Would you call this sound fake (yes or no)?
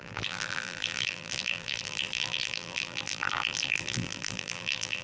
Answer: yes